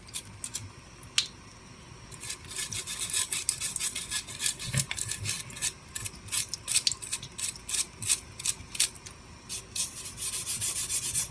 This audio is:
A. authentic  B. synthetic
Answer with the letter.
A